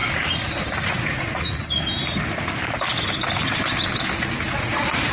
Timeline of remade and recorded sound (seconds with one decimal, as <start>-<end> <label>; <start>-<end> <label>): 0.0-1.6 remade; 1.6-4.5 recorded; 4.5-5.1 remade